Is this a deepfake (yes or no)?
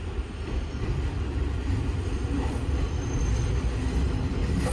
yes